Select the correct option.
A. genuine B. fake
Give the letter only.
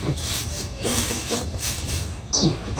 B